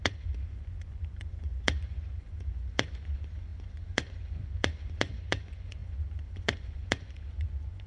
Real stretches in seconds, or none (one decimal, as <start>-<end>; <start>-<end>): none